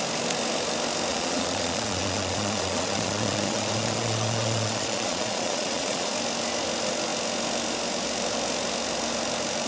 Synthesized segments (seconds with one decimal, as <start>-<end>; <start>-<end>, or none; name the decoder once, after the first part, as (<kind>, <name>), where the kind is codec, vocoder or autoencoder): 1.1-6.1 (vocoder, Vocos)